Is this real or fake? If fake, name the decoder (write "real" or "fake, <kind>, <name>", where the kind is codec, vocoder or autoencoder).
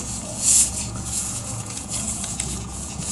fake, vocoder, Vocos